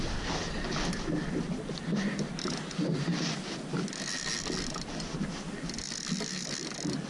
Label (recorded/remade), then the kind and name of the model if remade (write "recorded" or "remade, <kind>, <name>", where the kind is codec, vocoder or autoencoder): recorded